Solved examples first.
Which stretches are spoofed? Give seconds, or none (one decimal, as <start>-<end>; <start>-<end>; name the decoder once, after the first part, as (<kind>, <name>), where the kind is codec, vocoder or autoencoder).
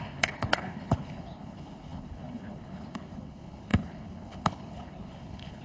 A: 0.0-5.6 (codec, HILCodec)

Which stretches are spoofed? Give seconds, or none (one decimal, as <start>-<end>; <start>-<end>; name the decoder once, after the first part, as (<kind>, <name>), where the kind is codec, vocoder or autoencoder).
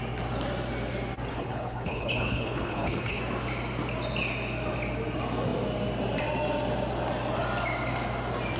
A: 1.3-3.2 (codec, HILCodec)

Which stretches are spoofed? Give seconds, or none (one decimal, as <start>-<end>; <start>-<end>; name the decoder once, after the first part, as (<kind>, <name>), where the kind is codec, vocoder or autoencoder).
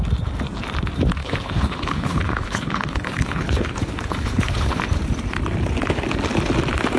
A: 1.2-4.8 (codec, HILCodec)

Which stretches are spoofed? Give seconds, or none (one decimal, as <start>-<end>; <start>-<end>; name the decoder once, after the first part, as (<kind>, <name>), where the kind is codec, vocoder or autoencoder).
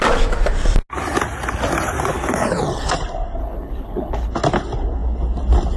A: 2.1-2.9 (codec, HILCodec); 3.4-4.3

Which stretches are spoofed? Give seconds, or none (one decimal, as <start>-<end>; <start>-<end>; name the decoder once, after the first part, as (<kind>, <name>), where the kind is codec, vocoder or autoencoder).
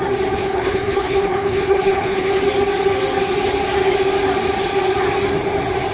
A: 0.4-2.4 (codec, HILCodec)